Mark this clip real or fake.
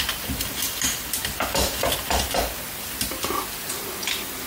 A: real